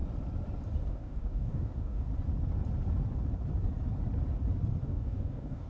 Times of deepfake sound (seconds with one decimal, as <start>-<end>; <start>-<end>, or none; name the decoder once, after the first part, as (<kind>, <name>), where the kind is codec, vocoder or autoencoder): 0.9-2.1 (codec, DAC); 4.8-5.7

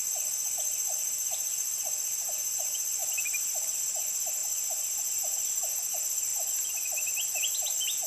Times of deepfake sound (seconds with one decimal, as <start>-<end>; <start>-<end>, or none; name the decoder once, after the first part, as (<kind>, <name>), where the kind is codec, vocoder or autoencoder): 3.0-3.8 (vocoder, BigVGAN v2); 4.4-5.5

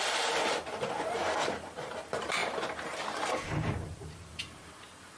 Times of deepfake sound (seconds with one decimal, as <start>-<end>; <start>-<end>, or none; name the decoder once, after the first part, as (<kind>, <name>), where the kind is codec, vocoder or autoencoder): 0.0-5.2 (vocoder, BigVGAN v2)

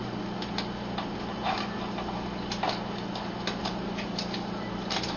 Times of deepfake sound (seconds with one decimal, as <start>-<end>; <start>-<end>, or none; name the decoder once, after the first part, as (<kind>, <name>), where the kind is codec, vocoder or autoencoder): 1.3-1.8 (vocoder, BigVGAN v2); 3.6-5.2

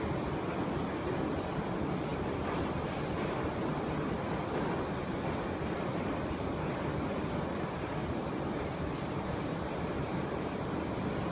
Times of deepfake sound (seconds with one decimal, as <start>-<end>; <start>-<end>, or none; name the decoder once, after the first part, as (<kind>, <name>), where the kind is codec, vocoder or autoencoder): 8.0-10.7 (vocoder, BigVGAN v2)